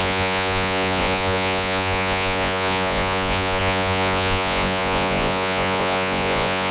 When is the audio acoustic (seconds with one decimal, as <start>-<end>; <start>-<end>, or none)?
none

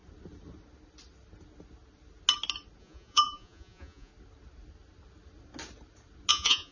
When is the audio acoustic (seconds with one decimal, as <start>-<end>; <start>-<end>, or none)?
0.0-2.8; 4.1-6.3

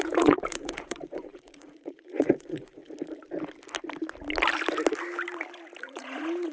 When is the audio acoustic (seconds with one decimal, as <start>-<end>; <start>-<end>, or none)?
2.8-5.8

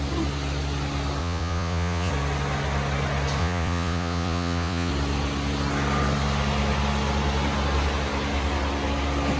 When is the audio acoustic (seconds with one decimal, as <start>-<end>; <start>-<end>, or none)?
0.0-1.2; 2.1-3.4; 4.9-9.4

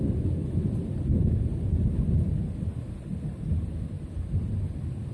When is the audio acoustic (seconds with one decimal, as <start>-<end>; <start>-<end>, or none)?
0.0-5.1